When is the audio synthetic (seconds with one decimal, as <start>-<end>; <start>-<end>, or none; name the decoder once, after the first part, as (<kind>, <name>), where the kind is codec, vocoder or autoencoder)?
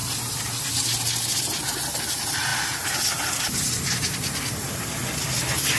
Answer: none